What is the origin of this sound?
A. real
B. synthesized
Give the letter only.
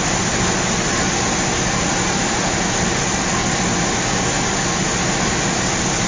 A